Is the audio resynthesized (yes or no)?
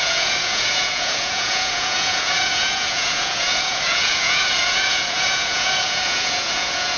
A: yes